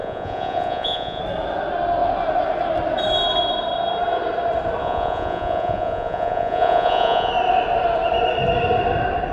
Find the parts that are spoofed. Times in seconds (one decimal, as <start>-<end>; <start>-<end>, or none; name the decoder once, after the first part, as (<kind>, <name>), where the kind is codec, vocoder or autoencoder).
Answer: 0.0-1.2 (vocoder, Vocos); 4.8-7.3